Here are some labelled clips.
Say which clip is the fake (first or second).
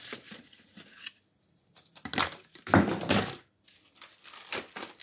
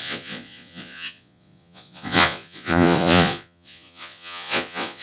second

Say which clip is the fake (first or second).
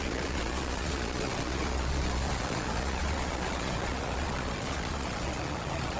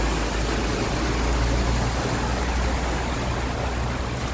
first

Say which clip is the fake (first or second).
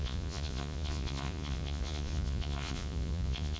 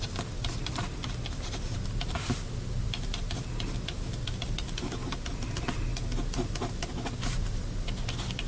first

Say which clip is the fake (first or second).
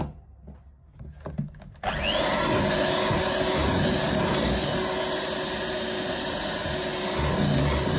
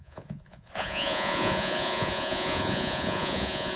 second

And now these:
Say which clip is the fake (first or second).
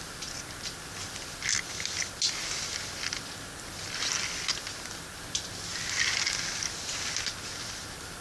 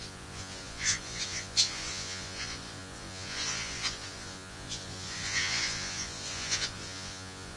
second